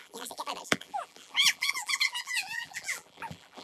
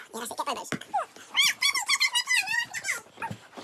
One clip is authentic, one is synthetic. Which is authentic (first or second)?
second